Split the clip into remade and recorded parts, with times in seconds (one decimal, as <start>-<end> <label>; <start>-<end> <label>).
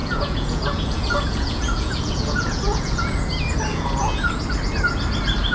0.0-3.3 remade; 3.3-3.7 recorded; 3.7-4.4 remade; 4.4-5.5 recorded